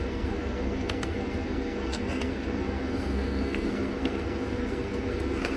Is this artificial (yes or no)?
yes